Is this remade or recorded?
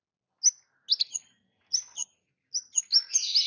recorded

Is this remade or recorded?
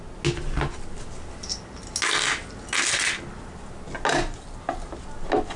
recorded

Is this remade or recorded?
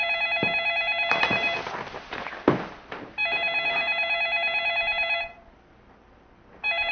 recorded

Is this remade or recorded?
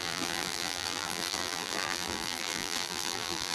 remade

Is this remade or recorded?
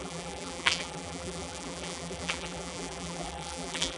remade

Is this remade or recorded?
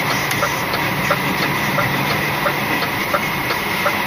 remade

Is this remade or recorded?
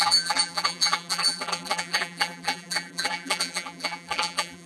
remade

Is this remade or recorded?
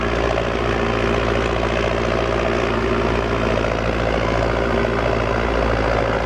recorded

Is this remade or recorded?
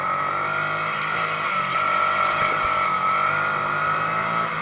recorded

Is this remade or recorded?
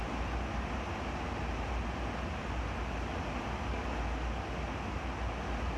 recorded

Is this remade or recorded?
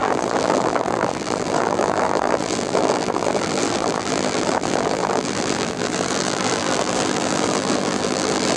remade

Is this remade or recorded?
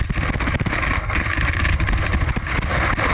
recorded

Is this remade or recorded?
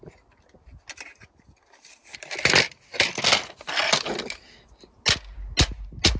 recorded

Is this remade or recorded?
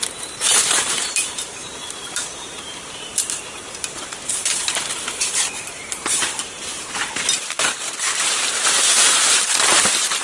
remade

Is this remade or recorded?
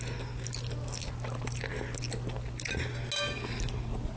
recorded